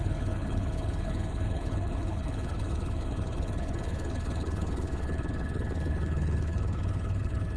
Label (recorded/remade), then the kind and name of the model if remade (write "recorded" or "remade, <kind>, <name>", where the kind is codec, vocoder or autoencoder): remade, codec, HILCodec